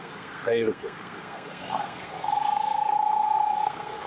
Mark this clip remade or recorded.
remade